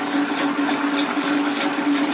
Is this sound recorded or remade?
recorded